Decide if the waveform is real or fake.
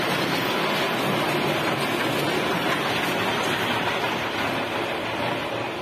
real